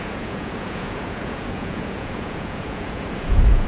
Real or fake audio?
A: fake